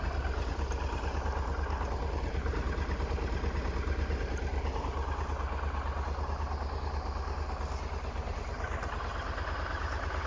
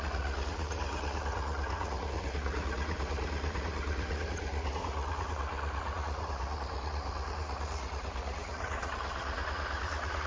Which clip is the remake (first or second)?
second